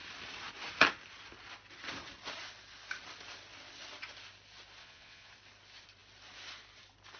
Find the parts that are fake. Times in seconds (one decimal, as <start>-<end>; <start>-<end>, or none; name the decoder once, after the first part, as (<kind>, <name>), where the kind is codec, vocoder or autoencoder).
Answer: 4.8-5.3 (vocoder, Vocos)

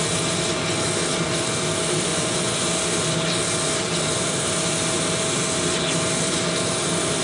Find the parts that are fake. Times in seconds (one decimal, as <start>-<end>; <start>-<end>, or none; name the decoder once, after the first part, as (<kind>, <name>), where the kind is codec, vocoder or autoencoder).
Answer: 2.1-2.7 (vocoder, Vocos)

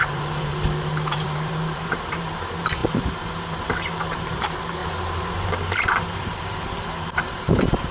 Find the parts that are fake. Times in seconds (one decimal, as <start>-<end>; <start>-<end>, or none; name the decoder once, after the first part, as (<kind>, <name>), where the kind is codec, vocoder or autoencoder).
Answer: 0.0-7.9 (vocoder, BigVGAN v2)

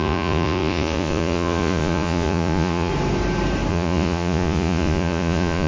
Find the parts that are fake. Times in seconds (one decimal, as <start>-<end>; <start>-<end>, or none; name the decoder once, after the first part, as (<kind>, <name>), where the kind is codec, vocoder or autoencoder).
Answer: 0.0-2.9 (vocoder, Vocos); 3.7-5.7